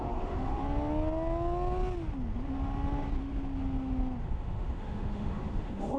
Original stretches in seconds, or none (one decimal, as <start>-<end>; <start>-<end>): 0.6-4.2